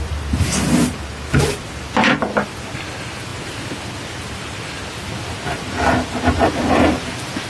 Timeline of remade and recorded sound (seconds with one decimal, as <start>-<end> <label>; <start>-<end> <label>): 0.0-7.5 recorded